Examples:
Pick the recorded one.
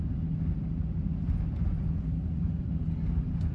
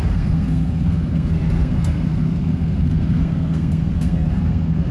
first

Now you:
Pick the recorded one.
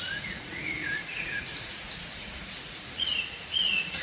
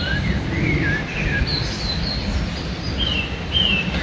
second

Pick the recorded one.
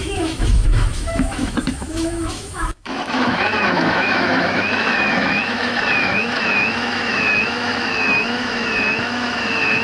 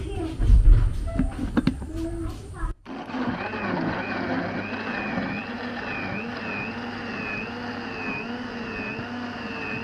second